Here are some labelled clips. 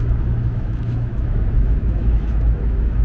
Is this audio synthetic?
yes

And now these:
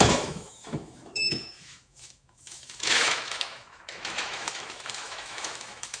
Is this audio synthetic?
yes